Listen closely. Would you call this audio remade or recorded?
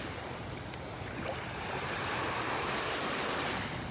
recorded